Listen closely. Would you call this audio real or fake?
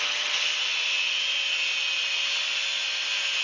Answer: real